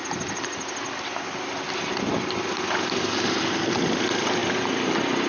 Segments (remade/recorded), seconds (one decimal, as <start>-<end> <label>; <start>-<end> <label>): 0.0-5.3 recorded